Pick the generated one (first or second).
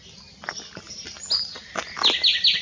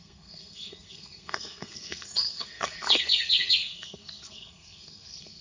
second